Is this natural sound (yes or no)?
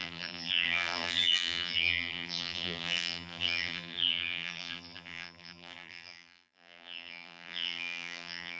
no